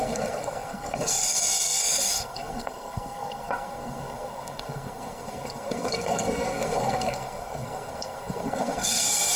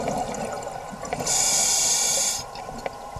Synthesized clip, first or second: first